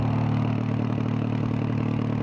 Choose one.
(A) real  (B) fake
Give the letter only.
A